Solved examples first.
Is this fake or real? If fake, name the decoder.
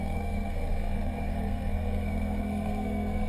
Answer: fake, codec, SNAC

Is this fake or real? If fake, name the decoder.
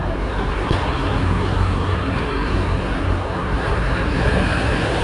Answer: fake, codec, SNAC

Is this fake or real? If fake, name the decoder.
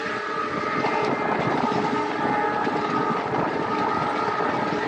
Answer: real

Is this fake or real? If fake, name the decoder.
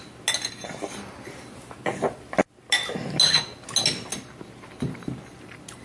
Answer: real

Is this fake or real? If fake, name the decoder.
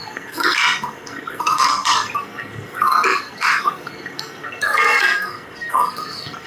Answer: fake, codec, SNAC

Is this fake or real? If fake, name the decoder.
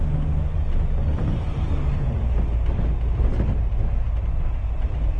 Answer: real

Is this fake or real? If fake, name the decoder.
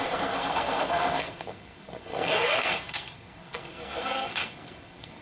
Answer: fake, codec, SNAC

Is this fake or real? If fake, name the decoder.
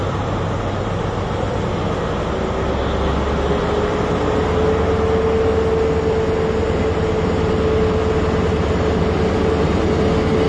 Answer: real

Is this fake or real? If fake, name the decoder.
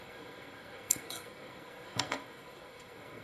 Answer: fake, codec, SNAC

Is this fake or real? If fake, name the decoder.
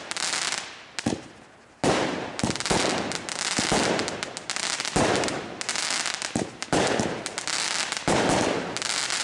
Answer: real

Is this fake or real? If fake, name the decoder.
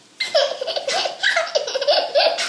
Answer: real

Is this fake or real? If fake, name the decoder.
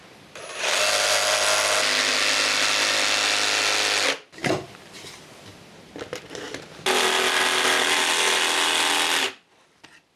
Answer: real